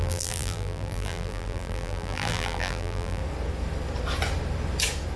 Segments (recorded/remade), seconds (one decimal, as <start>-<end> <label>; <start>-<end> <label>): 0.0-3.2 remade; 3.2-5.2 recorded